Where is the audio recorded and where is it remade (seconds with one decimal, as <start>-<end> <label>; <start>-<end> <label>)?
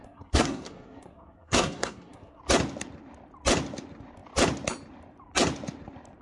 0.0-2.4 remade; 2.4-6.2 recorded